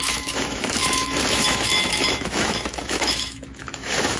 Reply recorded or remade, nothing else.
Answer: remade